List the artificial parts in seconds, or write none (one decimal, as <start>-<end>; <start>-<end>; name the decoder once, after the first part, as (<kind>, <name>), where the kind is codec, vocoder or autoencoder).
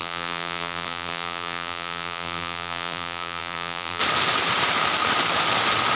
0.0-4.0 (vocoder, BigVGAN v2)